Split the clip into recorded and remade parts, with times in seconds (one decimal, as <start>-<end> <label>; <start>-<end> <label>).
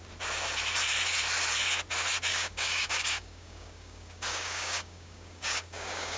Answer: 0.0-2.3 recorded; 2.3-6.2 remade